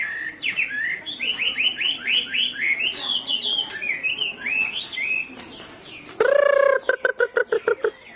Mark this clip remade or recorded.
recorded